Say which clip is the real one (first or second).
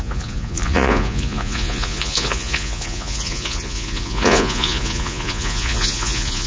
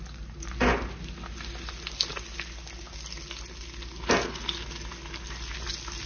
second